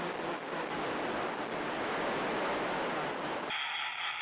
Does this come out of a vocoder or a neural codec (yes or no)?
no